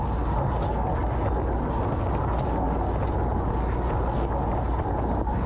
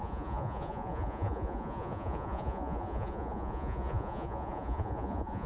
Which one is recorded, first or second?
first